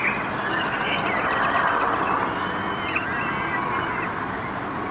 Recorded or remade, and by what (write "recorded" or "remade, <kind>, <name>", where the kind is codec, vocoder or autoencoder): recorded